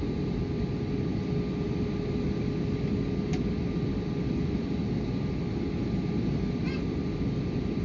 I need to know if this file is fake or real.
real